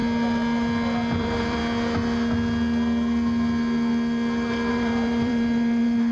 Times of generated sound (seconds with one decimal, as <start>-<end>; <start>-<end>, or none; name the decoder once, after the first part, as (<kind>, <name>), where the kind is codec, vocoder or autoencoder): 1.2-1.6 (vocoder, BigVGAN v2); 4.7-6.1